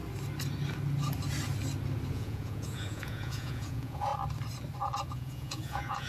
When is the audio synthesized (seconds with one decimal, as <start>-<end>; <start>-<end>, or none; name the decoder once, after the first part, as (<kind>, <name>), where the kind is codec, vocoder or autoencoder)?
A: 2.1-4.1 (vocoder, Vocos); 5.1-6.1